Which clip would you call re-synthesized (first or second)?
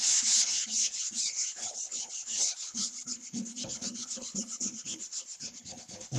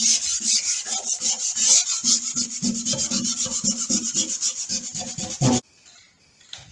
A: first